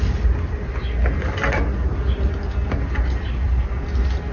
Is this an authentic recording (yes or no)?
yes